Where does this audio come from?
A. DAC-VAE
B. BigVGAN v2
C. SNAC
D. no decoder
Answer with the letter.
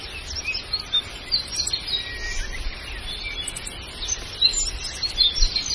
D